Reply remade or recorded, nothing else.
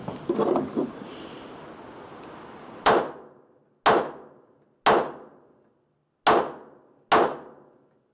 recorded